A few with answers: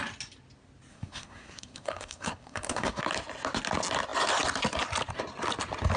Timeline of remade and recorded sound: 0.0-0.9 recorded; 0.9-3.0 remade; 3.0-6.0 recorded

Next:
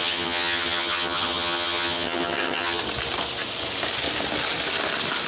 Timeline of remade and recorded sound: 0.0-2.8 remade; 2.8-5.3 recorded

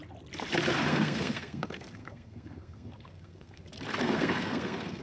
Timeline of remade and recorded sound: 0.0-0.9 recorded; 0.9-3.6 remade; 3.6-4.0 recorded; 4.0-5.0 remade

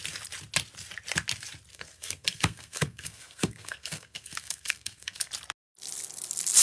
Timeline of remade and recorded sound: 0.0-1.7 recorded; 1.7-5.3 remade; 5.3-6.6 recorded

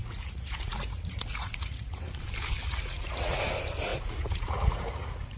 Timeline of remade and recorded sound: 0.0-2.2 remade; 2.2-2.6 recorded; 2.6-3.4 remade; 3.4-3.9 recorded; 3.9-5.4 remade

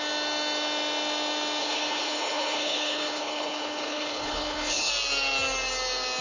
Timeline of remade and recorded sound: 0.0-1.6 recorded; 1.6-4.9 remade; 4.9-6.2 recorded

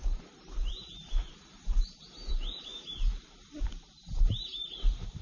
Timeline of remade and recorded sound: 0.0-1.8 remade; 1.8-2.7 recorded; 2.7-4.6 remade; 4.6-5.2 recorded